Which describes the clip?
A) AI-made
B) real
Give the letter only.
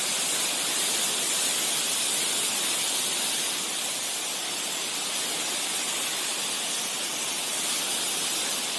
B